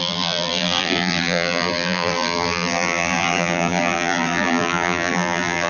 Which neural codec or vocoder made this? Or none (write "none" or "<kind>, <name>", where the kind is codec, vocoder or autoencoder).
vocoder, BigVGAN v2